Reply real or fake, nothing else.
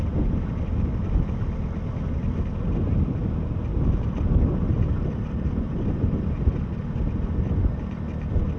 real